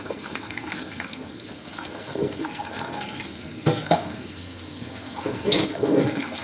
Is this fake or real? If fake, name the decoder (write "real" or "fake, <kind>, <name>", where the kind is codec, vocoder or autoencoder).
fake, codec, SNAC